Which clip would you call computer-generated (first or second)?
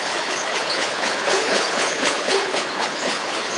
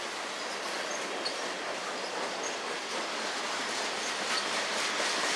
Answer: first